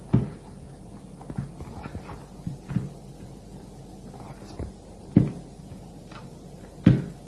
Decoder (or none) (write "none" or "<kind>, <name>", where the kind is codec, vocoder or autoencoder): none